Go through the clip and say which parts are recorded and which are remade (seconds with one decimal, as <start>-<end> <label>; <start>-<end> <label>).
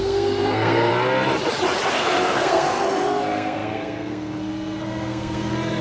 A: 0.0-0.9 remade; 0.9-1.9 recorded; 1.9-5.8 remade